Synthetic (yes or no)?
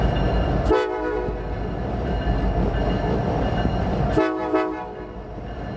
no